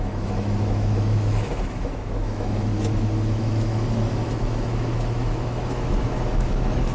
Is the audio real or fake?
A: fake